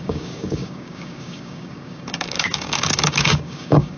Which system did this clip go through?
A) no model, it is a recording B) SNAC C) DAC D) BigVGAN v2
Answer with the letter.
C